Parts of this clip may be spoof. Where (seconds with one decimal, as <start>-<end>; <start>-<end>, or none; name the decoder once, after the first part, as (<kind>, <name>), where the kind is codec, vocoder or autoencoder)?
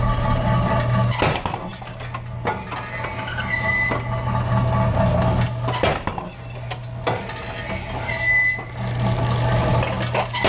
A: none